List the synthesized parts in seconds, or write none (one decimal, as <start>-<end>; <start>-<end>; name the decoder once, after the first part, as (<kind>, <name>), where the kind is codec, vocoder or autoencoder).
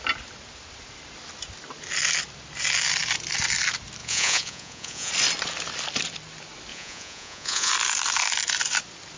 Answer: 4.0-5.1 (vocoder, Vocos); 6.7-7.7